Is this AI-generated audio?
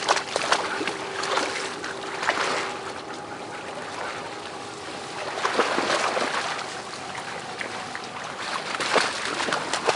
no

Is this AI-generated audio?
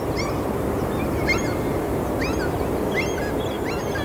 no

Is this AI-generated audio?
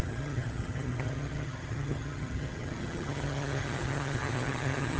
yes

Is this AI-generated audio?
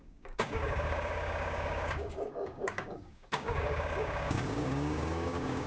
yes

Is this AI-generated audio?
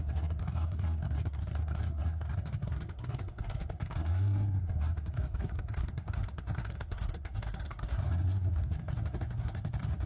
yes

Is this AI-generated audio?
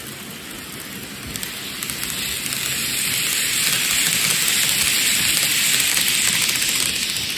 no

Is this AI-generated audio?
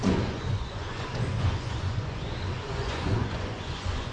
yes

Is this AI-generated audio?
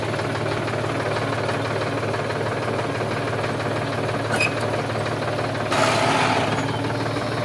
no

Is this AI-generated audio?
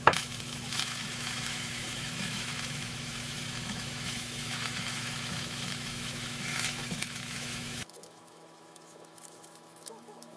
yes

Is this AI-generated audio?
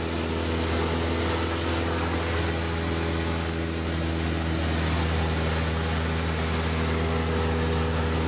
no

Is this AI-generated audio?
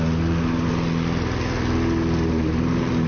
no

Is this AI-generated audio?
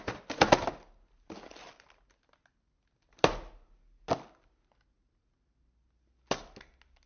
no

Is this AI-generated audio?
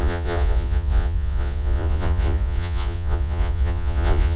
yes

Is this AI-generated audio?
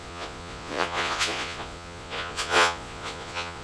yes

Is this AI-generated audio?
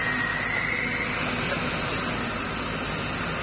no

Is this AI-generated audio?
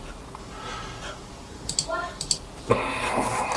no